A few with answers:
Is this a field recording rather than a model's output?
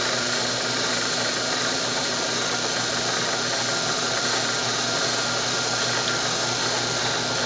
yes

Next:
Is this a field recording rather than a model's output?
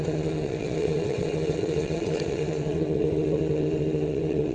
no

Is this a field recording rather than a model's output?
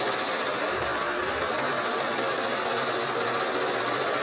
yes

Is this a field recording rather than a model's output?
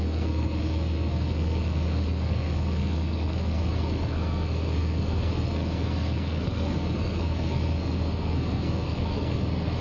no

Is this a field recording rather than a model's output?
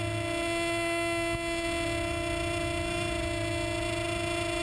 yes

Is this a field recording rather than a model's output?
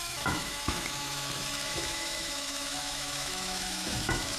no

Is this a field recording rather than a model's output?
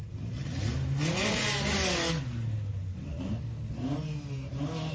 yes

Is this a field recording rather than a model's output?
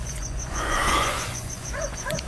no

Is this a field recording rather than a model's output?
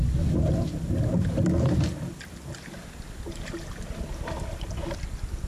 yes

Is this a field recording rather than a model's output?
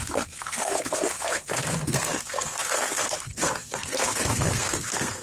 no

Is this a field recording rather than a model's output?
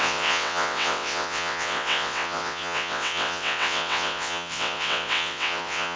no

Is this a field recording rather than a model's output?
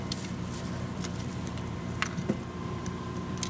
no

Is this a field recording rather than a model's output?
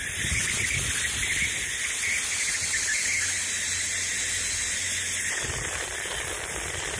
yes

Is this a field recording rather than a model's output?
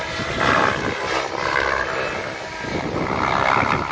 yes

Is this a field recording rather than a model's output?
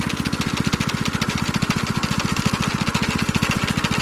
yes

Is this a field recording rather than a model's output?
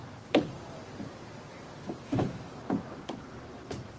no